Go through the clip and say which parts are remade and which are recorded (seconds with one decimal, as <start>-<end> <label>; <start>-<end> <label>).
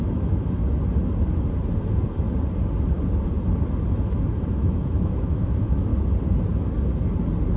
0.0-0.6 remade; 0.6-4.5 recorded; 4.5-5.9 remade; 5.9-7.6 recorded